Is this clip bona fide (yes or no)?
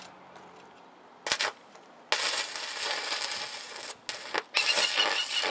yes